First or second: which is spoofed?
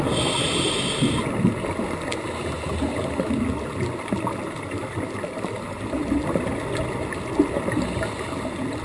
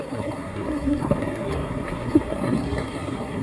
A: second